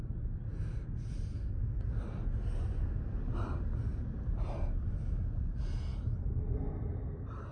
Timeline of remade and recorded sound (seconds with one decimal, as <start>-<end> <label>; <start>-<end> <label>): 0.0-7.5 recorded